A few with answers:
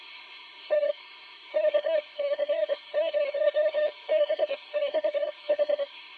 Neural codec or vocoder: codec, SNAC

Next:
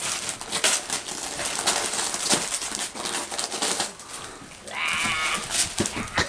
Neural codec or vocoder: none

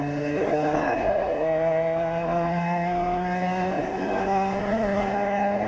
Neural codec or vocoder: codec, SNAC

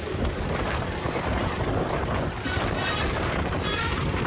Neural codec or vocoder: vocoder, BigVGAN v2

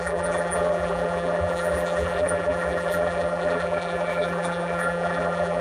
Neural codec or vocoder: vocoder, BigVGAN v2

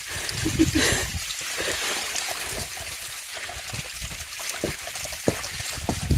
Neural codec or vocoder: none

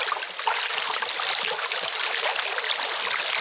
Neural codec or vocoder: none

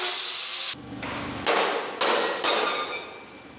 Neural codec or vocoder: none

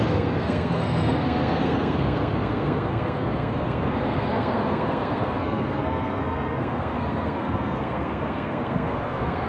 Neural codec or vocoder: codec, SNAC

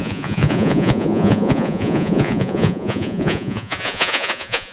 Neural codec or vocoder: vocoder, Vocos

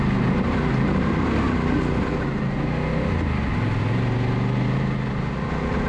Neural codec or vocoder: none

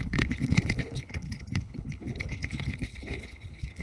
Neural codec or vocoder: codec, HILCodec